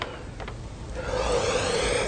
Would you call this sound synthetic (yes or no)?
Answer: no